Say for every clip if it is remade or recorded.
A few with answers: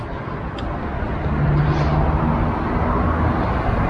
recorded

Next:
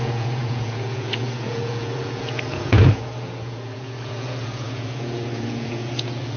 remade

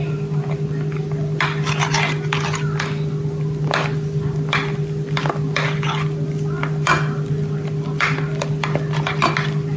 recorded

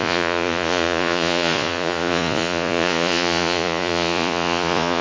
remade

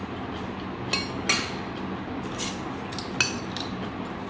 recorded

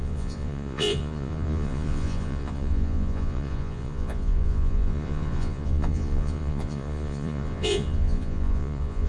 remade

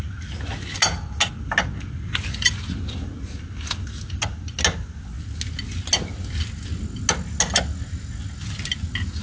recorded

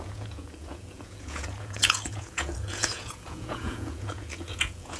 remade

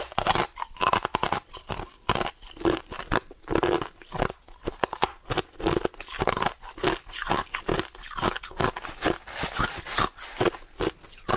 recorded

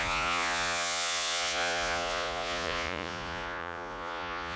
remade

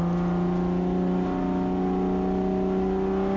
recorded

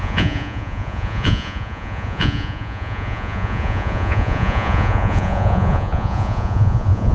remade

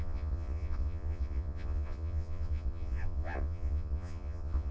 remade